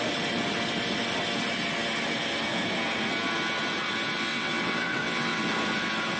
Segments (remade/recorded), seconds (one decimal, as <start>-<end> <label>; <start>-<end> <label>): 0.0-4.3 recorded; 4.3-5.4 remade; 5.4-6.2 recorded